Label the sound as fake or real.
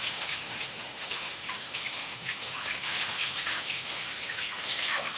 fake